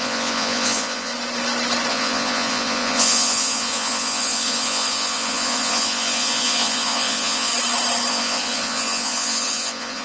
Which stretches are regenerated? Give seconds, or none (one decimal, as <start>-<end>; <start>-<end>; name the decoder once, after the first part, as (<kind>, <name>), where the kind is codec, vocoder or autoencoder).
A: 0.0-1.1 (vocoder, Vocos); 1.9-7.5; 8.1-10.0